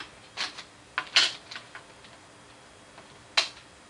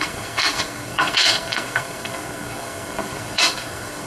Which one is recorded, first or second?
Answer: first